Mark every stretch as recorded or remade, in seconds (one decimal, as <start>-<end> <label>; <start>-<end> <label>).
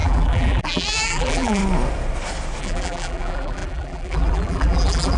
0.0-1.6 remade; 1.6-2.6 recorded; 2.6-5.2 remade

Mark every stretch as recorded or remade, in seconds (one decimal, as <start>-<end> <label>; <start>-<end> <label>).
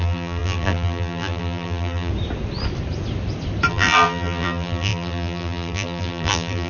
0.0-2.1 remade; 2.1-3.7 recorded; 3.7-6.7 remade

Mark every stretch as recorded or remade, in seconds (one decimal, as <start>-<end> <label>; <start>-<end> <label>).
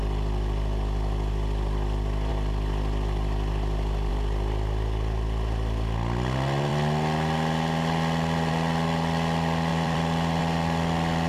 0.0-2.3 recorded; 2.3-4.1 remade; 4.1-9.7 recorded; 9.7-10.4 remade; 10.4-11.3 recorded